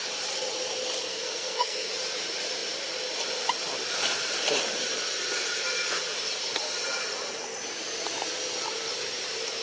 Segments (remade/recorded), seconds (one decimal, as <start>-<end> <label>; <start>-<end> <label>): 0.0-1.1 recorded; 1.1-1.9 remade; 1.9-9.6 recorded